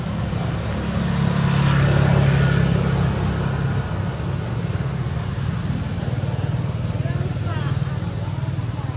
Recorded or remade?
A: recorded